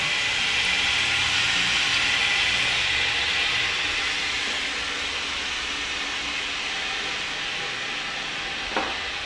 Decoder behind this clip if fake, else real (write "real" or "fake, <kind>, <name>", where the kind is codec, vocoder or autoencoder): real